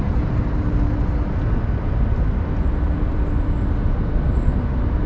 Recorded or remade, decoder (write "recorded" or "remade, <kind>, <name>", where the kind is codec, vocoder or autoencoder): recorded